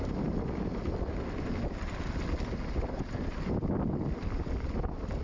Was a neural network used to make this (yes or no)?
no